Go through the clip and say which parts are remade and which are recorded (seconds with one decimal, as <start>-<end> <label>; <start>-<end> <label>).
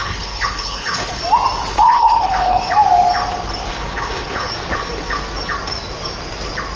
0.0-1.2 remade; 1.2-1.7 recorded; 1.7-2.6 remade; 2.6-3.7 recorded; 3.7-4.5 remade; 4.5-6.8 recorded